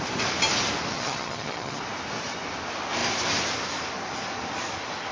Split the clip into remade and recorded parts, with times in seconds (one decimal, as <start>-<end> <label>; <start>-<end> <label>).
0.0-0.9 recorded; 0.9-1.8 remade; 1.8-5.1 recorded